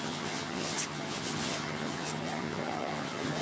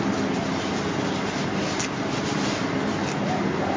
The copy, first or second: first